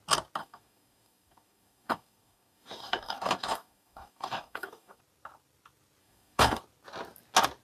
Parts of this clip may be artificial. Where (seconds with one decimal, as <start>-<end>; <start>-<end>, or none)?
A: 0.4-5.0; 6.0-6.6